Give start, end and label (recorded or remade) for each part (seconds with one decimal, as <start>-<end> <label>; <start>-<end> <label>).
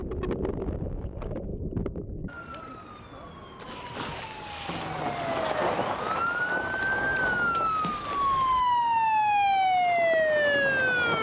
0.0-11.2 recorded